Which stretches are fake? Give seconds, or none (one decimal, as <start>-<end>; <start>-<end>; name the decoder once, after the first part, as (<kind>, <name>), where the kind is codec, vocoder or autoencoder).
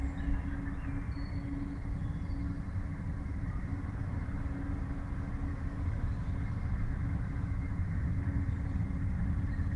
5.5-7.7 (autoencoder, DAC-VAE)